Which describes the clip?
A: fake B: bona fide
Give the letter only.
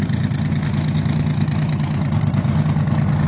B